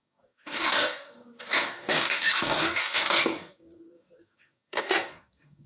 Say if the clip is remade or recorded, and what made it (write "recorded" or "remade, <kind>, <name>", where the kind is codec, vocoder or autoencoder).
remade, codec, DAC